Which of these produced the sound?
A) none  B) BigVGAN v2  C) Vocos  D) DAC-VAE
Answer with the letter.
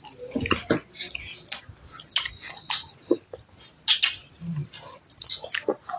A